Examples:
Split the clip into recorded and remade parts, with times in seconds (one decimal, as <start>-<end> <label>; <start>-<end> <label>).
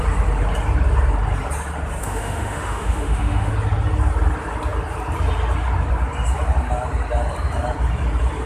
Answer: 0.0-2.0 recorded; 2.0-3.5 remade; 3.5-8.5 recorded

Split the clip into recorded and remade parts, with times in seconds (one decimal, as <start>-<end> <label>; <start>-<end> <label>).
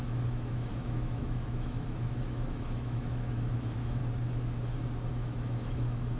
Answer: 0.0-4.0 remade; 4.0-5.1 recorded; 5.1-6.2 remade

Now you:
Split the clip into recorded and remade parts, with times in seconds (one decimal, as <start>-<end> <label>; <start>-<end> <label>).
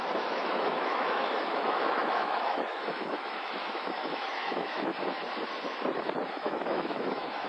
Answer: 0.0-4.9 remade; 4.9-6.3 recorded; 6.3-7.5 remade